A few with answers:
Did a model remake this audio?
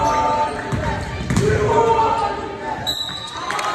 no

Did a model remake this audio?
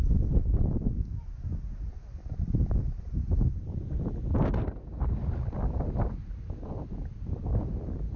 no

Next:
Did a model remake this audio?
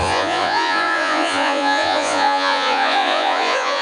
yes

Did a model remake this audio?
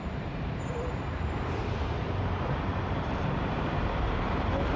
yes